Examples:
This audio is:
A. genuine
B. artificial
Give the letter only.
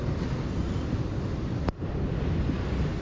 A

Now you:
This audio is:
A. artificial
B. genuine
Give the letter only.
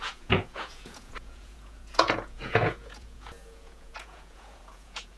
A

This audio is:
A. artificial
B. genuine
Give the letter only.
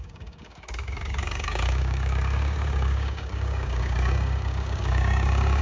A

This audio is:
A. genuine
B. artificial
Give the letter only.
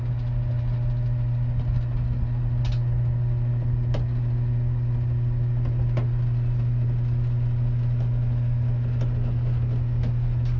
A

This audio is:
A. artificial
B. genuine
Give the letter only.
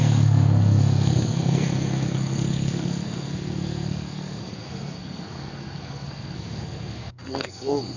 A